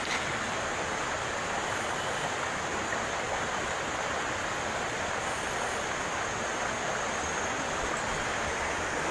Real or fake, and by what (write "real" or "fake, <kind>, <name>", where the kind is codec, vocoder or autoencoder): real